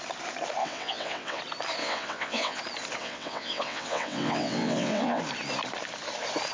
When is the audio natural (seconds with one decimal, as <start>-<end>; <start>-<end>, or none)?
0.0-0.6; 1.4-1.8; 2.6-3.0; 5.2-6.5